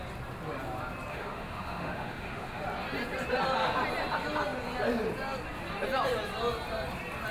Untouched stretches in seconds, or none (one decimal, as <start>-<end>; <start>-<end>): 0.0-1.1; 2.6-7.3